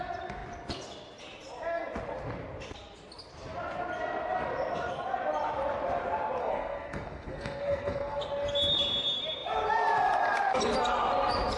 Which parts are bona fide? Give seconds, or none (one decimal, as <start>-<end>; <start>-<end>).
0.0-6.4; 8.2-11.6

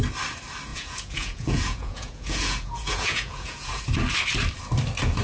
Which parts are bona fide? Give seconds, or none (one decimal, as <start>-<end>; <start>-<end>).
0.0-0.7; 3.8-5.2

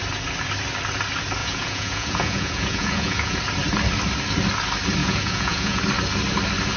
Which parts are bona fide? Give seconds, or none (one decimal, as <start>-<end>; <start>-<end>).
0.0-1.4; 3.4-5.0; 5.8-6.8

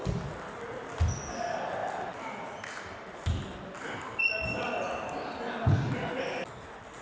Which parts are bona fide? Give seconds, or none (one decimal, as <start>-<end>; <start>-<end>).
0.0-7.0